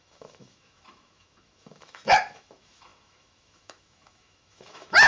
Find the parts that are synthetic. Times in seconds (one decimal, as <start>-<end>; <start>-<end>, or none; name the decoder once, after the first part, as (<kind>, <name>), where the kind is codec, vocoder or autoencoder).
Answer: 0.0-5.1 (autoencoder, DAC-VAE)